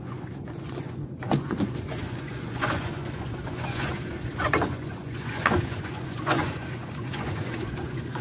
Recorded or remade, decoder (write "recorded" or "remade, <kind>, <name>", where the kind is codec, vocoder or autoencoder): remade, vocoder, Vocos